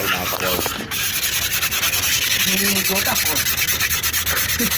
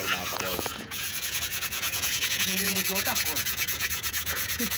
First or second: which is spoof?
second